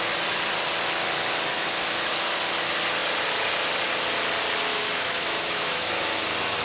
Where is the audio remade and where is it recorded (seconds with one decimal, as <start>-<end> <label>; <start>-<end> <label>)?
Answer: 0.0-1.5 recorded; 1.5-2.1 remade; 2.1-4.7 recorded; 4.7-5.9 remade; 5.9-6.6 recorded